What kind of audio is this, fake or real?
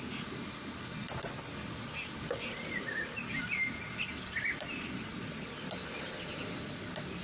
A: real